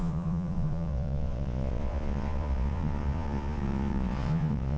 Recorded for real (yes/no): no